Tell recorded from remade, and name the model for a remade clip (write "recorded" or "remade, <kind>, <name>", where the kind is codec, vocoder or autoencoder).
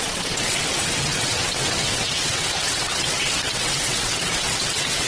remade, vocoder, WaveNeXt